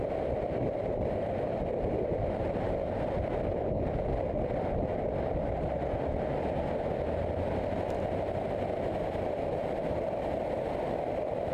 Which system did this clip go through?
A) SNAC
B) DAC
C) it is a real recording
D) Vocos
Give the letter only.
C